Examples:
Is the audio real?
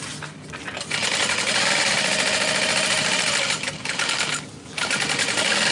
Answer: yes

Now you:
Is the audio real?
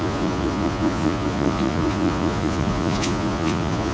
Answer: no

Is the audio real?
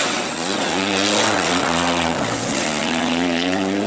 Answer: no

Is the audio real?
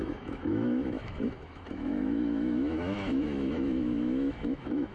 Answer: no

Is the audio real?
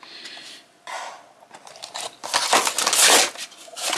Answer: yes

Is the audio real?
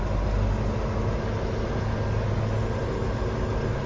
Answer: yes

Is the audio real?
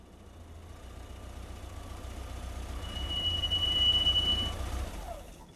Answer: yes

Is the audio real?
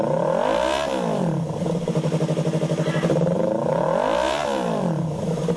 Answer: yes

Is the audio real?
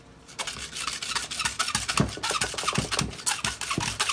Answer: yes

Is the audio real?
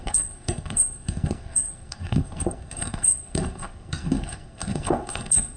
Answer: no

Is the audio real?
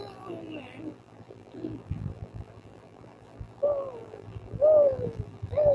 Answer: no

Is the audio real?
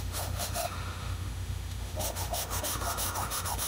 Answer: no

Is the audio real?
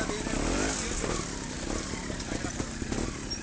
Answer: yes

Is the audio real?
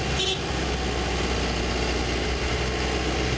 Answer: yes